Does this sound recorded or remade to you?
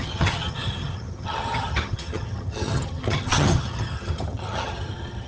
remade